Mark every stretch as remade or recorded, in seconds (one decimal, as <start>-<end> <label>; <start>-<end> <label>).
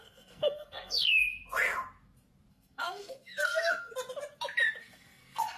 0.0-1.3 remade; 1.3-2.5 recorded; 2.5-3.9 remade; 3.9-4.8 recorded; 4.8-5.6 remade